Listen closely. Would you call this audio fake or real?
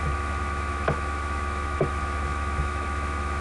fake